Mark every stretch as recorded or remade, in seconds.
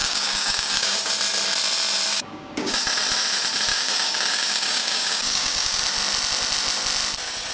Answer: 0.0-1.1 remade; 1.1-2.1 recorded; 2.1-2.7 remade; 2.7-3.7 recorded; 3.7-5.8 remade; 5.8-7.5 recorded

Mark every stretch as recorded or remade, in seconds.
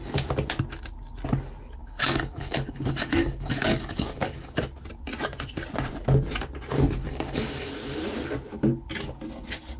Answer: 0.0-1.8 recorded; 1.8-4.6 remade; 4.6-7.0 recorded; 7.0-7.7 remade; 7.7-9.8 recorded